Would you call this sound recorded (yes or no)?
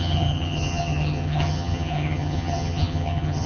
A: no